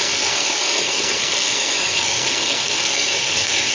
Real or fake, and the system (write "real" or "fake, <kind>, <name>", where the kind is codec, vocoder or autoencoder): fake, codec, SNAC